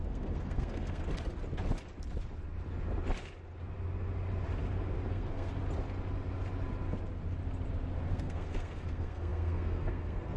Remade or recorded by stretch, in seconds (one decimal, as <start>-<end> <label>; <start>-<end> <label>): 0.0-1.1 remade; 1.1-5.1 recorded; 5.1-5.5 remade; 5.5-8.1 recorded; 8.1-10.4 remade